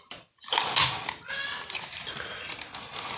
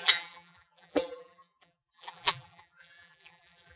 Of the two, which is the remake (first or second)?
second